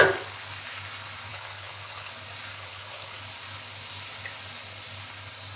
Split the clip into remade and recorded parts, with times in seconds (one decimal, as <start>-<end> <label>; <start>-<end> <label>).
0.0-1.3 recorded; 1.3-2.1 remade; 2.1-2.5 recorded; 2.5-3.2 remade; 3.2-5.6 recorded